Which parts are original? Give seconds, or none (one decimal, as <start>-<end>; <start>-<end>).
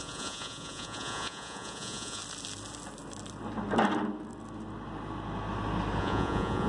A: 2.2-6.0